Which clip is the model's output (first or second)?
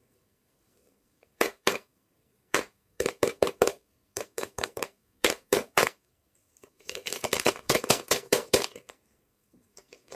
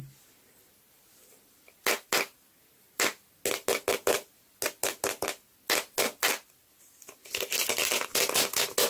first